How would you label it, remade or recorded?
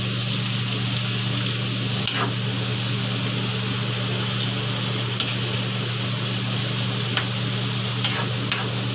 recorded